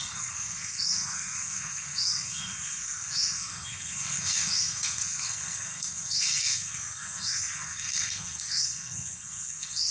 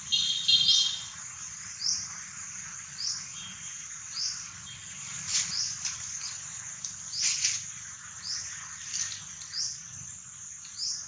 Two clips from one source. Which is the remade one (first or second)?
first